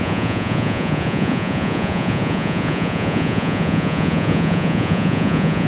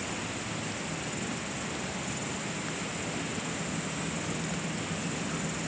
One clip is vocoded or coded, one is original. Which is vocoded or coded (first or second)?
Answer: first